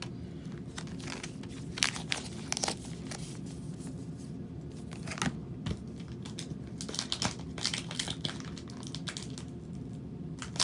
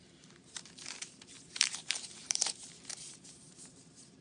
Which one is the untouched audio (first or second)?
first